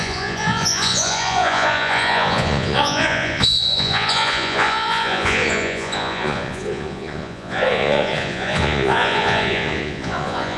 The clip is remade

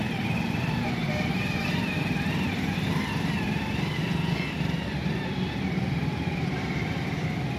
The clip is remade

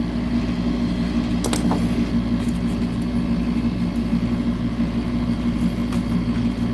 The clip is recorded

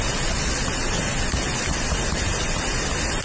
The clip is recorded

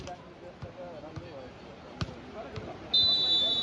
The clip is recorded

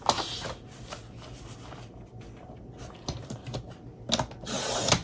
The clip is recorded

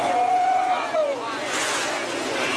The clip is remade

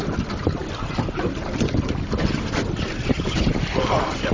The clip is recorded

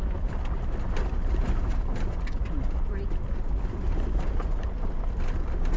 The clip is recorded